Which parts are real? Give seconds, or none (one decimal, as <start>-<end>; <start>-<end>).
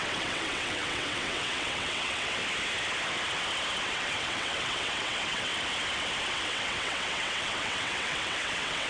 2.4-3.8; 5.5-6.3